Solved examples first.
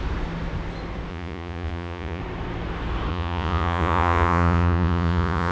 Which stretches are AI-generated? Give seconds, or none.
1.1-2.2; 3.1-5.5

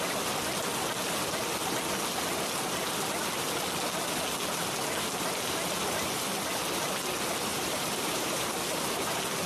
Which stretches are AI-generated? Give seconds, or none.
7.5-8.5

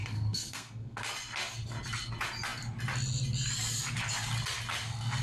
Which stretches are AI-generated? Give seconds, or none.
0.0-1.0

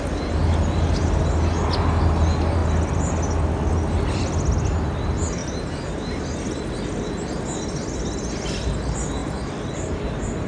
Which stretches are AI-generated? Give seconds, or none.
5.4-6.2; 9.2-9.9

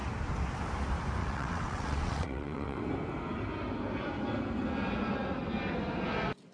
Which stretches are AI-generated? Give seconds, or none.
1.2-2.8

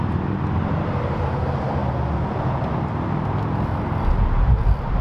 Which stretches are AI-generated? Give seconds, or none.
none